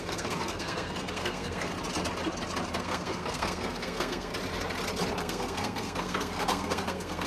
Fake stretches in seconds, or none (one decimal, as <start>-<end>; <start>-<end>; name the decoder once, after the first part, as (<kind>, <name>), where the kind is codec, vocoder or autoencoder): 0.0-1.7 (codec, SNAC); 2.8-4.3; 5.2-7.3